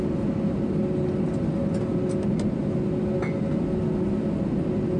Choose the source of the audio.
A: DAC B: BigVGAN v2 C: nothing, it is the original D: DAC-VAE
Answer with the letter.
C